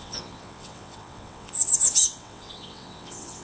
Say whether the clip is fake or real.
fake